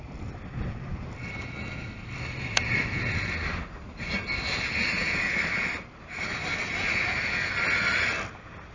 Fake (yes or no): no